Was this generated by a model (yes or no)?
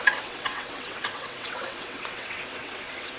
yes